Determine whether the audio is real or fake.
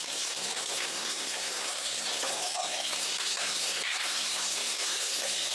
fake